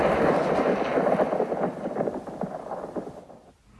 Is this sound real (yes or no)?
yes